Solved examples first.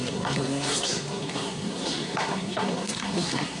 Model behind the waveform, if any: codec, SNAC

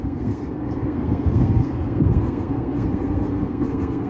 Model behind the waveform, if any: codec, SNAC